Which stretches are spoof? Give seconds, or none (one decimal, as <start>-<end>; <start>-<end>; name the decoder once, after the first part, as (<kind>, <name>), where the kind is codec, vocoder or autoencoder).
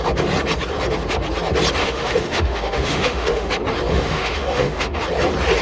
1.8-3.5 (autoencoder, DAC-VAE); 3.9-5.0